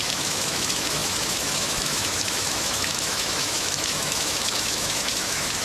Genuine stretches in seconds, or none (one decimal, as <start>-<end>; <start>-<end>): none